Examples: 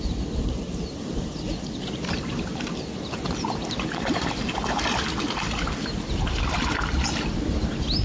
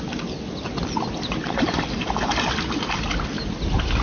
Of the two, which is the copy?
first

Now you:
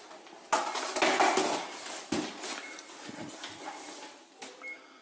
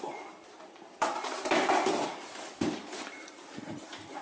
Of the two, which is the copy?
second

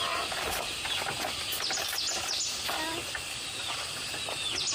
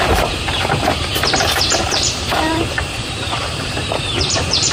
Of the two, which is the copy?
second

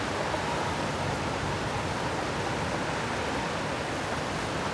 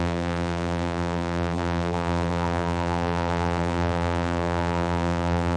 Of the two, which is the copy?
second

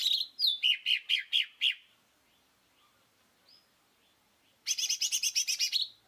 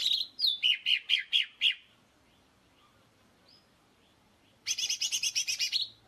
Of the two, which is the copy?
second